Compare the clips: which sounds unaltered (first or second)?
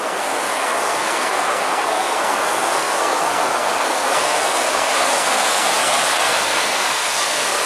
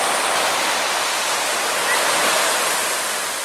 second